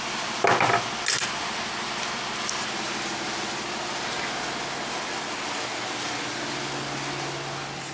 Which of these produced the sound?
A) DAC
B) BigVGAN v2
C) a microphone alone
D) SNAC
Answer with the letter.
C